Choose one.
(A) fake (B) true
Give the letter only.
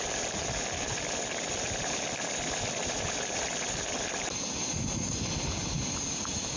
B